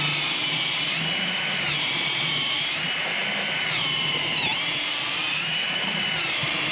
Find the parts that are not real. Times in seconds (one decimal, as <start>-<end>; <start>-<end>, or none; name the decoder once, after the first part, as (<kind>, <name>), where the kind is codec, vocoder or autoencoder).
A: 0.0-3.2 (vocoder, BigVGAN v2); 3.8-4.5; 5.2-6.7